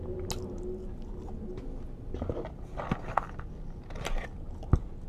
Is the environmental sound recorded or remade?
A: recorded